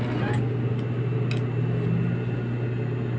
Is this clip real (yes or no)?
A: yes